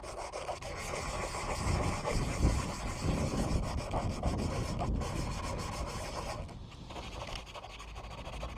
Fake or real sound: real